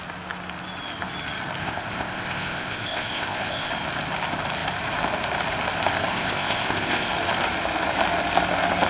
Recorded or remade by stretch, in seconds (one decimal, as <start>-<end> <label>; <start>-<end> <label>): 0.0-1.6 recorded; 1.6-3.7 remade; 3.7-6.1 recorded; 6.1-7.1 remade; 7.1-8.9 recorded